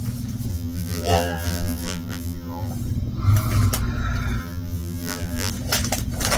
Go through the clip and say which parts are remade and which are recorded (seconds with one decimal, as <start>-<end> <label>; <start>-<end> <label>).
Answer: 0.0-0.5 recorded; 0.5-2.7 remade; 2.7-4.4 recorded; 4.4-5.5 remade; 5.5-6.4 recorded